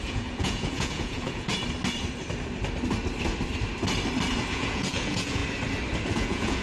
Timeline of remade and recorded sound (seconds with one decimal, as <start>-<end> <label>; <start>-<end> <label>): 0.0-1.5 remade; 1.5-4.5 recorded; 4.5-5.4 remade; 5.4-6.1 recorded; 6.1-6.6 remade